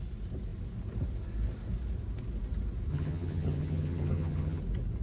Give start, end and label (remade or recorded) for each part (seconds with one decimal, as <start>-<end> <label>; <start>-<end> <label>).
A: 0.0-2.9 recorded; 2.9-4.6 remade; 4.6-5.0 recorded